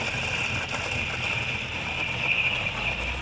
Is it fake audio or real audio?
real